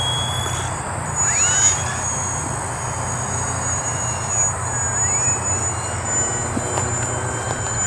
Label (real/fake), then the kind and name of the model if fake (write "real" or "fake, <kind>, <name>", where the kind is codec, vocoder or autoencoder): real